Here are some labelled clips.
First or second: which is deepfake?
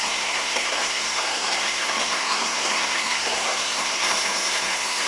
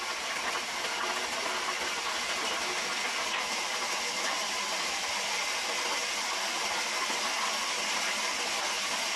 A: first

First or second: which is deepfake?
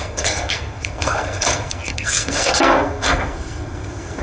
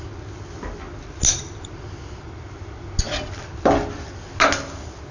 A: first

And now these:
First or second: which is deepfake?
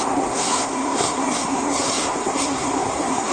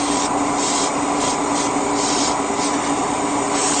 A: first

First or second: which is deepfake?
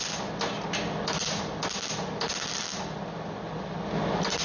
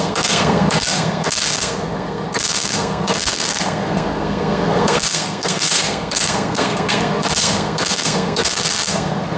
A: second